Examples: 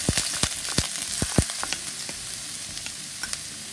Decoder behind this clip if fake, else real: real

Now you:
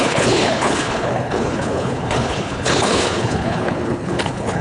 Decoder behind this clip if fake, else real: fake, codec, HILCodec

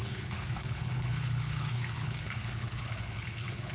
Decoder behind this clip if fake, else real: fake, codec, HILCodec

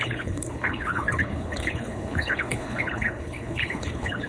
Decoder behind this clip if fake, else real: fake, codec, HILCodec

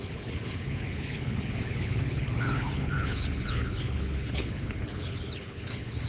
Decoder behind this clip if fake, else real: fake, codec, HILCodec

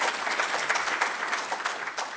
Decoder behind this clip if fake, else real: real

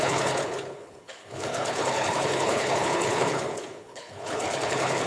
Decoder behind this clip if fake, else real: fake, codec, HILCodec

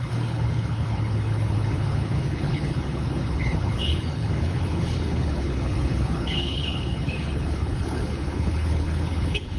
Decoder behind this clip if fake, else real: fake, codec, HILCodec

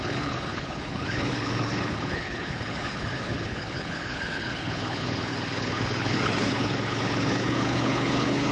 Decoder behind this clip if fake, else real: fake, codec, HILCodec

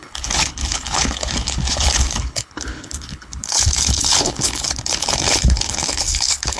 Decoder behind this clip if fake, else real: fake, codec, HILCodec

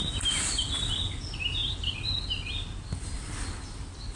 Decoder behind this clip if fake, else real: real